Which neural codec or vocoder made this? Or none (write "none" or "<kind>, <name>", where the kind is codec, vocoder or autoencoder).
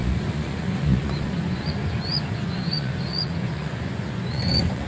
vocoder, Vocos